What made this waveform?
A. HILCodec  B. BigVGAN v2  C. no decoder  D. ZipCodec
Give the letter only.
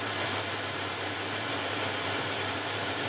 B